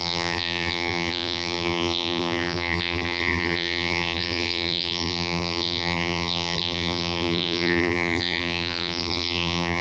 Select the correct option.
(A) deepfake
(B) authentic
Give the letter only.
A